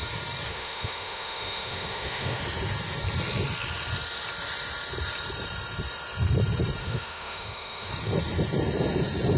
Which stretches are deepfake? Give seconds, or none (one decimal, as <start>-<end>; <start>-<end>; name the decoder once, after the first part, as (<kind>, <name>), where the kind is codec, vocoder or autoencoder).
0.5-2.4 (autoencoder, DAC-VAE); 6.8-7.9